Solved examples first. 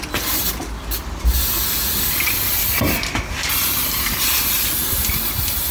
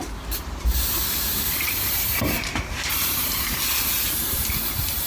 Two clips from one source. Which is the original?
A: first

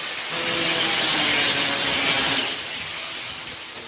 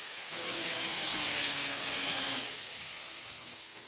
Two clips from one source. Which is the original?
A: first